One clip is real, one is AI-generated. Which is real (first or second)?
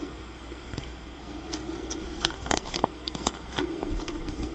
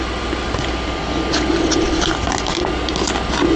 second